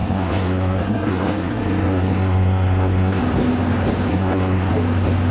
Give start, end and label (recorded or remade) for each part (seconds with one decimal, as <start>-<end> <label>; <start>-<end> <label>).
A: 0.0-3.2 remade; 3.2-4.1 recorded; 4.1-4.7 remade; 4.7-5.3 recorded

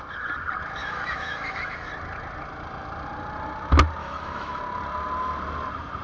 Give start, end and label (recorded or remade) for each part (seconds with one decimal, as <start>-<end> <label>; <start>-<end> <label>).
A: 0.0-0.8 recorded; 0.8-1.9 remade; 1.9-4.0 recorded; 4.0-4.6 remade; 4.6-6.0 recorded

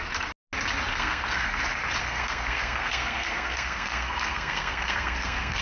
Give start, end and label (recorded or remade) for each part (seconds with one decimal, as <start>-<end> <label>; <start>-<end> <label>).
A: 0.0-0.9 recorded; 0.9-1.6 remade; 1.6-2.0 recorded; 2.0-5.6 remade

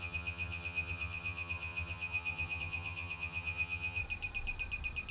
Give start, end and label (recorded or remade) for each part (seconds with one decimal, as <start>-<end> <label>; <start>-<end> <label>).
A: 0.0-4.0 remade; 4.0-5.1 recorded

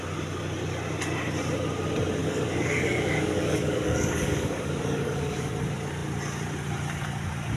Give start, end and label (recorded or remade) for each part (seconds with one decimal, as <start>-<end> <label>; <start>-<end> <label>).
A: 0.0-2.2 recorded; 2.2-5.5 remade; 5.5-7.6 recorded

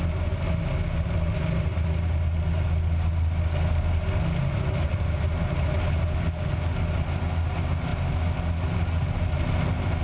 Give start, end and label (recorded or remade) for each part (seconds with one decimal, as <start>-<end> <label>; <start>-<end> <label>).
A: 0.0-10.0 recorded

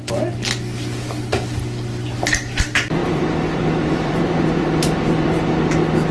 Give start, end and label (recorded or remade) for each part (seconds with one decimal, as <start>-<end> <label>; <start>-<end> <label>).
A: 0.0-3.0 recorded; 3.0-5.6 remade; 5.6-6.1 recorded

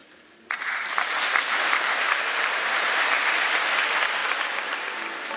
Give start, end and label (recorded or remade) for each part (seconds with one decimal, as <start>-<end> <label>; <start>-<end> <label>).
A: 0.0-3.2 remade; 3.2-4.2 recorded; 4.2-4.9 remade; 4.9-5.4 recorded